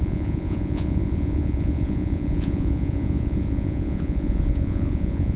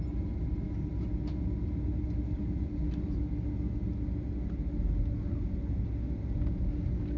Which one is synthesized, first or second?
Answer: first